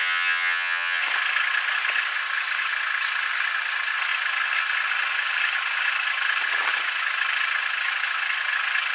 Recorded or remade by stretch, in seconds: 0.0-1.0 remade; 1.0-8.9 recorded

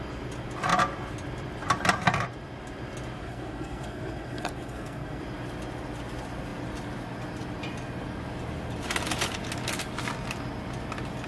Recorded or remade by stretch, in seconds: 0.0-3.2 recorded; 3.2-5.2 remade; 5.2-11.3 recorded